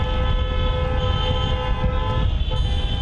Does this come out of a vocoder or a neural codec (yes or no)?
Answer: no